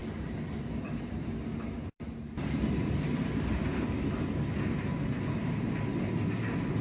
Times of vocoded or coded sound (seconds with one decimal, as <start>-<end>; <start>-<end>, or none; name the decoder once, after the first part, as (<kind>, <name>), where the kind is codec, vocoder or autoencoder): 0.0-3.6 (vocoder, BigVGAN v2)